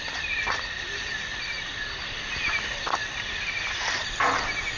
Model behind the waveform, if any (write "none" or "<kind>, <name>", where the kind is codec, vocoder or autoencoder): none